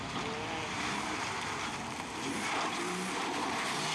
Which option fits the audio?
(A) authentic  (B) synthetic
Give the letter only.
A